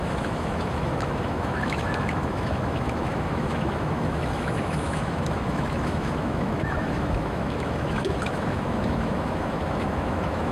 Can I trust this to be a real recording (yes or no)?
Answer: no